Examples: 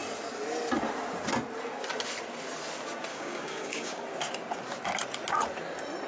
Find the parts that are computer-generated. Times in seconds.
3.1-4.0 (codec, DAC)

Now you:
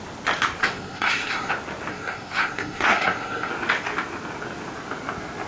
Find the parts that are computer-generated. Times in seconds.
0.6-1.5 (codec, SNAC); 1.9-3.5

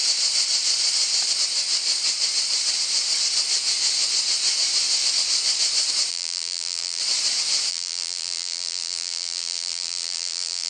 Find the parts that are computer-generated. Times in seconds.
6.1-7.0 (vocoder, BigVGAN v2); 7.7-10.7